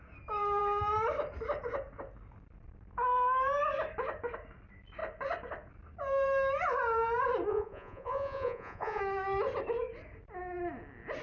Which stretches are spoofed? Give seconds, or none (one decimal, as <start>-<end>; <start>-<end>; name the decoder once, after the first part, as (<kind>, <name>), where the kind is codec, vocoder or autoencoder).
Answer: 7.5-9.0 (vocoder, Vocos)